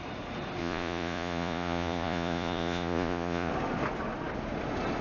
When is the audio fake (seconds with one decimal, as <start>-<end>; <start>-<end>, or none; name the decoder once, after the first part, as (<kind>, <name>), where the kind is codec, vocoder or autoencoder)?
0.6-3.5 (vocoder, Vocos)